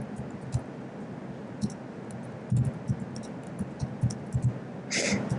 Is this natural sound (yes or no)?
yes